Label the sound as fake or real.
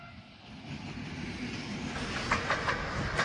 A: real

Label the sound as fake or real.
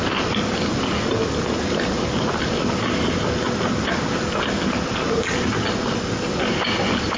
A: real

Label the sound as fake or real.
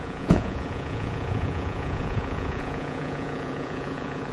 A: fake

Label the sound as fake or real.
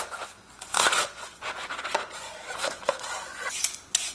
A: fake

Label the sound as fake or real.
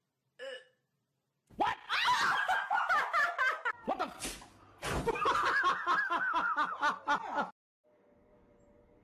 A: real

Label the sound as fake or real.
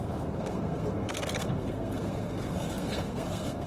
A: fake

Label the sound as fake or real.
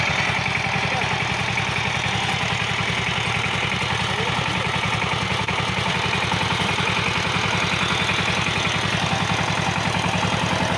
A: real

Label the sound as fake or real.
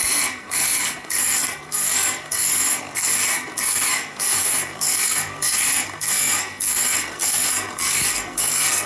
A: fake